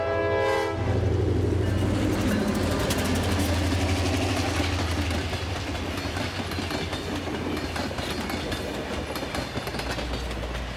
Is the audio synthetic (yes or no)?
no